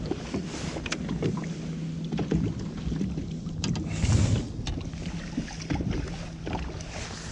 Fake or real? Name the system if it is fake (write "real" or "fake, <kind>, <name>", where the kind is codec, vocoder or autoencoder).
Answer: real